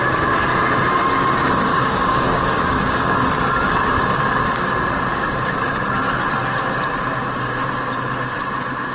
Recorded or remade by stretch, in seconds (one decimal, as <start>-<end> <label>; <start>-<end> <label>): 0.0-1.7 recorded; 1.7-3.3 remade; 3.3-8.9 recorded